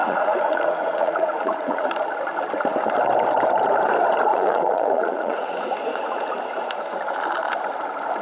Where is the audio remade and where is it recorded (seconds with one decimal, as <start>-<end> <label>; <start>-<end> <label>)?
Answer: 0.0-1.9 remade; 1.9-4.3 recorded; 4.3-6.4 remade; 6.4-8.2 recorded